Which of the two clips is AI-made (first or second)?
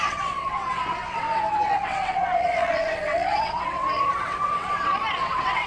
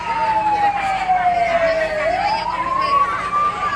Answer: first